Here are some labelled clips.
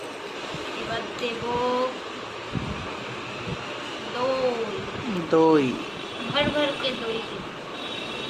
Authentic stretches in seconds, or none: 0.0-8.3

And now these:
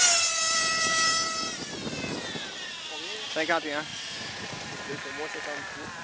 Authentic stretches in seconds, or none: 0.0-3.9; 4.8-6.0